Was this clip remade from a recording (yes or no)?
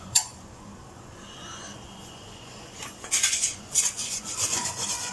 yes